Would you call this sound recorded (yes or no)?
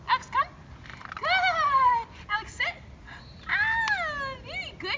yes